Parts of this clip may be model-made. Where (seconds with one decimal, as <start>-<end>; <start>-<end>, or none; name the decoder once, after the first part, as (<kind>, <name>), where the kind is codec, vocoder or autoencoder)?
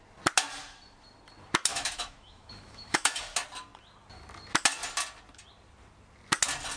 1.7-3.2 (autoencoder, DAC-VAE)